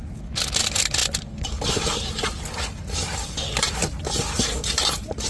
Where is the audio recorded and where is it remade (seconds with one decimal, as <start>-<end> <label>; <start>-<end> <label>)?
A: 0.0-5.3 recorded